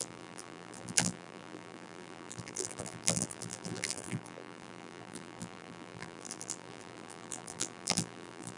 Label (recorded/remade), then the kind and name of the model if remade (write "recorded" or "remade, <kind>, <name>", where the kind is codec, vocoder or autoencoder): remade, vocoder, BigVGAN v2